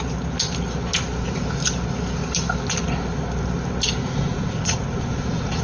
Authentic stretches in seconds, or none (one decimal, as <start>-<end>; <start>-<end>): 0.0-4.0